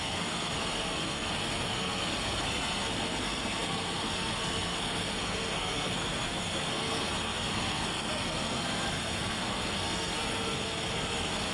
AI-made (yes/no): yes